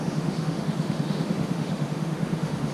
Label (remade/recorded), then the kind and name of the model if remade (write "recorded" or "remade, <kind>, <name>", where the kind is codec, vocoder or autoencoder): remade, autoencoder, DAC-VAE